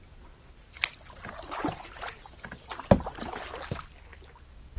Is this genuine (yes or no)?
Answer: yes